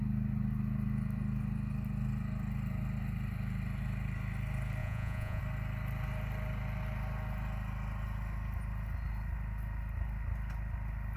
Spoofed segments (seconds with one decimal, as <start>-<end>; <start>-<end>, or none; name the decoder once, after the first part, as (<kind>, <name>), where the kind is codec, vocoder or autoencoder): 4.8-5.4 (vocoder, Vocos)